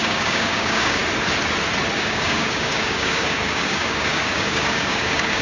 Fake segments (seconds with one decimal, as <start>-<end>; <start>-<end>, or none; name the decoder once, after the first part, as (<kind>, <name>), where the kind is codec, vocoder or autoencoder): 0.0-1.0 (codec, DAC); 2.0-5.4